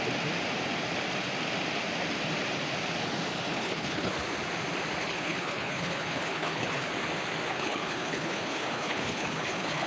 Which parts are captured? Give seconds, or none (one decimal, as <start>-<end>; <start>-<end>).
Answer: 0.0-3.5; 4.1-5.0; 6.9-7.5